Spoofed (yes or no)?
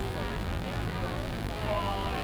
yes